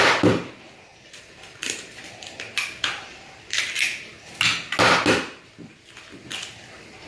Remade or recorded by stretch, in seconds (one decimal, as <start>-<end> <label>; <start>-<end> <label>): 0.0-0.9 recorded; 0.9-3.6 remade; 3.6-7.1 recorded

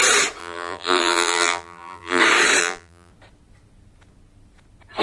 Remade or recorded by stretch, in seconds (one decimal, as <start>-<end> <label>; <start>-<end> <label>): 0.0-0.4 recorded; 0.4-2.2 remade; 2.2-2.6 recorded; 2.6-3.1 remade; 3.1-5.0 recorded

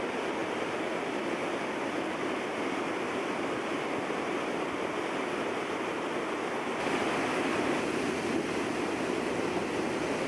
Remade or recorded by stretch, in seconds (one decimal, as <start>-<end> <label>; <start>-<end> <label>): 0.0-10.3 recorded

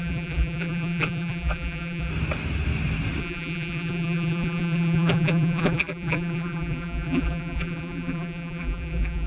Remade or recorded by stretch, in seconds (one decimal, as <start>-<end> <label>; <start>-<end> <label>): 0.0-2.1 remade; 2.1-3.2 recorded; 3.2-9.3 remade

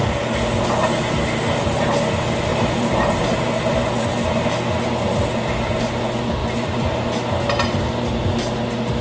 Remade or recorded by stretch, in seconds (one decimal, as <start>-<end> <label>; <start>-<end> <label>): 0.0-2.5 recorded; 2.5-3.4 remade; 3.4-9.0 recorded

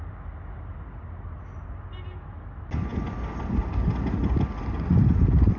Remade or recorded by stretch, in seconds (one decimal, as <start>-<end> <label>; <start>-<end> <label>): 0.0-5.6 recorded

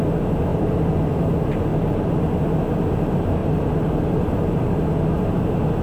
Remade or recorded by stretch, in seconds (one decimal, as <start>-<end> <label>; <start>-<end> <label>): 0.0-0.5 recorded; 0.5-1.2 remade; 1.2-1.7 recorded; 1.7-2.2 remade; 2.2-3.4 recorded; 3.4-4.8 remade; 4.8-5.8 recorded